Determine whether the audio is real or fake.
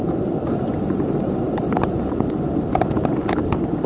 fake